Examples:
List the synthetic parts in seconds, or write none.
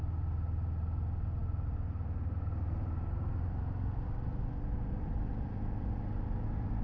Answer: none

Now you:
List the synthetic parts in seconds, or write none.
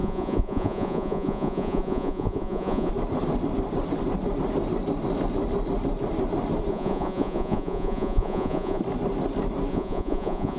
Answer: 0.0-2.9 (vocoder, Vocos); 6.7-8.8; 9.7-10.6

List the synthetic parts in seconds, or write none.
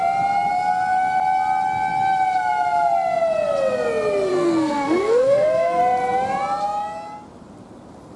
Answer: 4.3-5.8 (codec, SNAC)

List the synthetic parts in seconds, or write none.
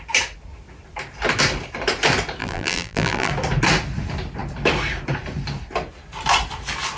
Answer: 2.4-3.3 (vocoder, BigVGAN v2)